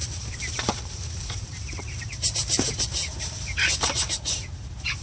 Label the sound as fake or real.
fake